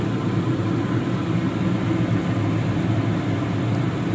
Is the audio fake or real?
real